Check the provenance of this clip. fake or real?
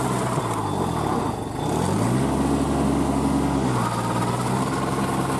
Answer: real